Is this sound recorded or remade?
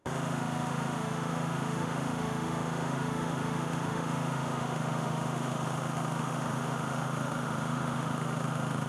remade